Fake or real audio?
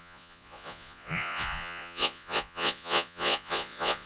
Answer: fake